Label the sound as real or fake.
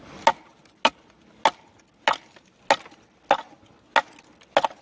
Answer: real